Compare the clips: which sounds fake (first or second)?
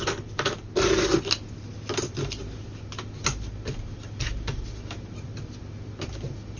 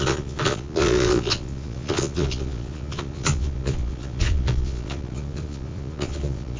second